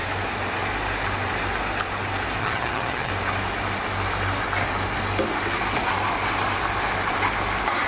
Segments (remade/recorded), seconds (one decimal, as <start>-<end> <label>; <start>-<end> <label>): 0.0-2.4 recorded; 2.4-3.1 remade; 3.1-7.9 recorded